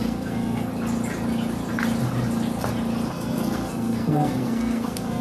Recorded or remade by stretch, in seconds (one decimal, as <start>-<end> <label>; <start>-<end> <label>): 0.0-0.7 remade; 0.7-3.1 recorded; 3.1-5.2 remade